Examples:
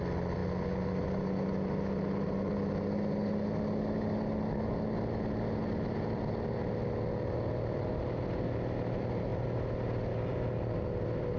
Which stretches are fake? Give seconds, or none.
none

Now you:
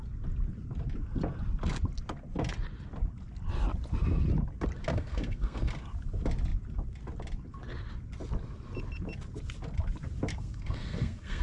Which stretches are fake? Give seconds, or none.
4.9-5.7 (codec, SNAC); 10.3-11.4